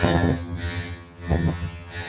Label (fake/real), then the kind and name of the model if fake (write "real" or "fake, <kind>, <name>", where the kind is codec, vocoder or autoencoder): fake, vocoder, HiFi-GAN